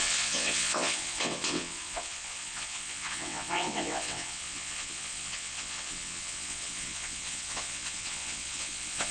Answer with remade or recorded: remade